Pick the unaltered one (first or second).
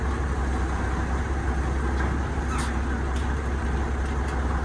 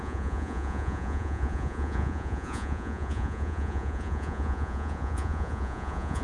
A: first